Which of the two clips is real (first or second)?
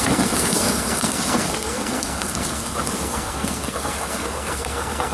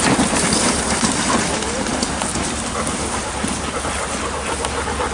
second